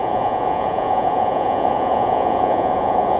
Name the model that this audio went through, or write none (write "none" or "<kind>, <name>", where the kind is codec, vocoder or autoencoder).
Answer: vocoder, Vocos